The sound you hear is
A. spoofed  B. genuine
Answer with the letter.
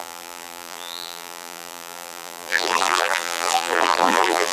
A